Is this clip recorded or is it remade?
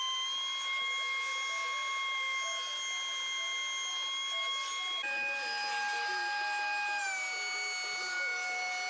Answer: recorded